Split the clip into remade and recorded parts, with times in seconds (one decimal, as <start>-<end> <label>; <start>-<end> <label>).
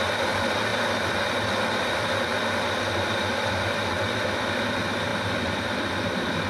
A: 0.0-6.5 recorded